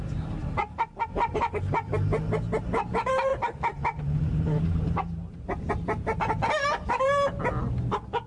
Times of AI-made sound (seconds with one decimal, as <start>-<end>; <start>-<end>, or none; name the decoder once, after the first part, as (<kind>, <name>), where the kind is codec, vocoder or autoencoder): 0.6-1.9 (vocoder, BigVGAN v2); 3.3-5.7